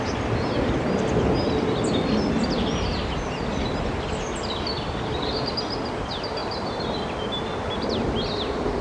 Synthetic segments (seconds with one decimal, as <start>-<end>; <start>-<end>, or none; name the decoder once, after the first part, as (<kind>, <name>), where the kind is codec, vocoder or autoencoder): 6.4-7.1 (vocoder, BigVGAN v2)